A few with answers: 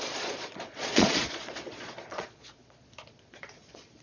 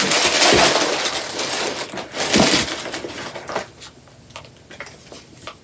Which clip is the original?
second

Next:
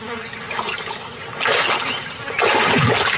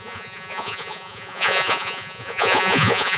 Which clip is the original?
first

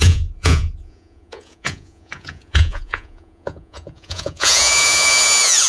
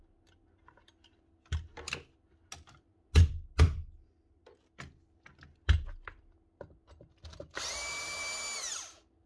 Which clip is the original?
second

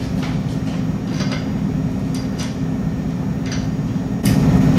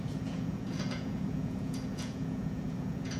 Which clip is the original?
first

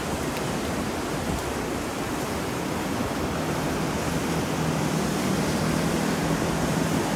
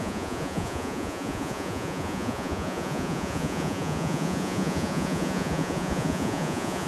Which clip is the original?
first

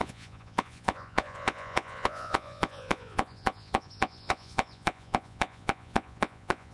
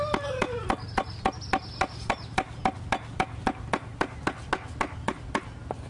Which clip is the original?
second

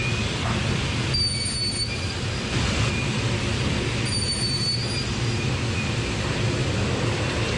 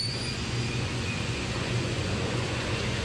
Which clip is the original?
first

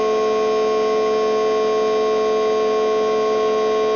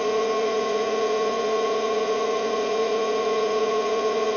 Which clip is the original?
first